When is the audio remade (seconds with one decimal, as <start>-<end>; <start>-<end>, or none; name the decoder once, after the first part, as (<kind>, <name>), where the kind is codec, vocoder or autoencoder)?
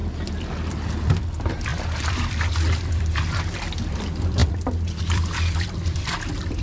1.2-4.4 (vocoder, BigVGAN v2); 5.0-6.6